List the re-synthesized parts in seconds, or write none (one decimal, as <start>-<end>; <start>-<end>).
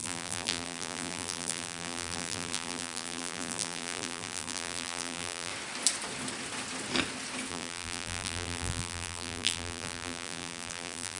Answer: 0.0-5.5; 7.5-11.2